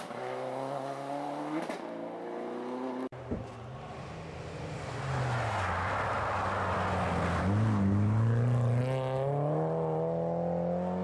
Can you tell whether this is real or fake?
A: real